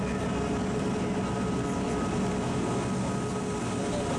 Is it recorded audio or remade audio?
recorded